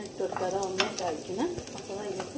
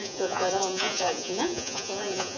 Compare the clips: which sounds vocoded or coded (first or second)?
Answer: second